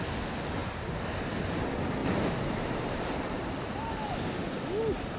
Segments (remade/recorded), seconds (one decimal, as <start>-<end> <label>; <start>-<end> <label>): 0.0-0.6 recorded; 0.6-1.6 remade; 1.6-2.0 recorded; 2.0-3.9 remade; 3.9-5.2 recorded